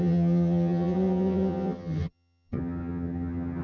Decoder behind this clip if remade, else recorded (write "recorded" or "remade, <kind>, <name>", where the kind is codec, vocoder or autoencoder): remade, vocoder, HiFi-GAN